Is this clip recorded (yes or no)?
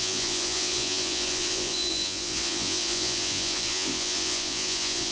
no